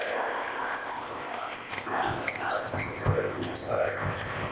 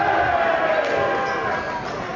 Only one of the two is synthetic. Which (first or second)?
first